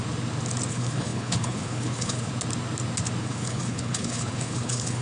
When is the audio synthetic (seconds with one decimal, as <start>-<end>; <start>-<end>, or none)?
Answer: 0.7-2.3; 3.2-5.0